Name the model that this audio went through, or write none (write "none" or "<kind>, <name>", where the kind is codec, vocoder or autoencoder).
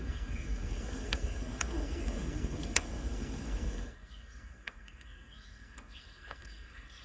codec, SNAC